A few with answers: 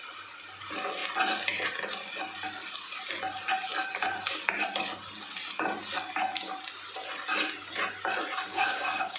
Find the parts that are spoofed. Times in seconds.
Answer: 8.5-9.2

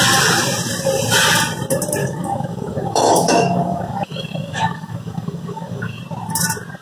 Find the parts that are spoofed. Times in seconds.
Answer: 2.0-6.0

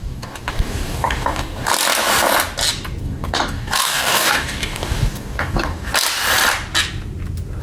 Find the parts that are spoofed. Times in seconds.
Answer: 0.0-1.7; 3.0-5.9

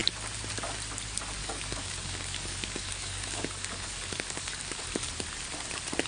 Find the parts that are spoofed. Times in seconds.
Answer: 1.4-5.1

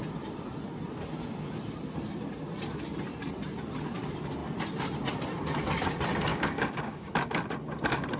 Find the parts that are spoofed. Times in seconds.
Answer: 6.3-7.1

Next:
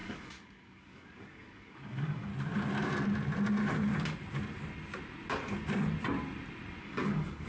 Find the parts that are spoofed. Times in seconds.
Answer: 0.0-2.3; 6.8-7.5

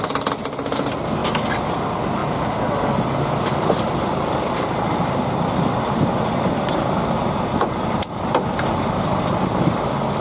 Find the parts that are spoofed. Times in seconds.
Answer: none

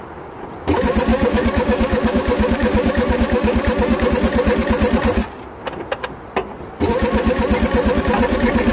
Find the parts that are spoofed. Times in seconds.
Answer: 1.1-4.1